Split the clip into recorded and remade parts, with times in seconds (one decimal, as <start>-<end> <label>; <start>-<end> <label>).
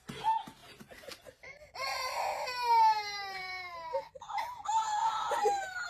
0.0-0.6 recorded; 0.6-2.2 remade; 2.2-3.4 recorded; 3.4-4.3 remade; 4.3-5.9 recorded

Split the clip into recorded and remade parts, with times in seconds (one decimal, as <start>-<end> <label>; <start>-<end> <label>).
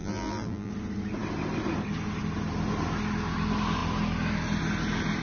0.0-0.7 remade; 0.7-5.2 recorded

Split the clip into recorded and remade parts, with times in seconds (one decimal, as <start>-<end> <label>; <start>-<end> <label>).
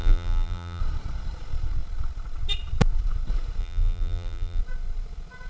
0.0-0.8 remade; 0.8-3.6 recorded; 3.6-4.6 remade; 4.6-5.5 recorded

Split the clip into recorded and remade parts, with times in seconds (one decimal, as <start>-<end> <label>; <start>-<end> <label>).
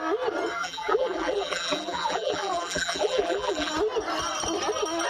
0.0-0.6 recorded; 0.6-3.7 remade; 3.7-5.1 recorded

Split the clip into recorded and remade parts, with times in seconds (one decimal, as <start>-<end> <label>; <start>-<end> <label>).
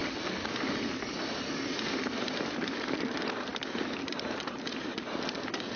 0.0-5.8 recorded